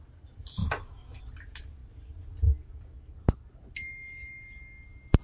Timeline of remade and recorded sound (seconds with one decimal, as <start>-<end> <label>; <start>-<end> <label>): 0.0-0.6 recorded; 0.6-1.2 remade; 1.2-5.2 recorded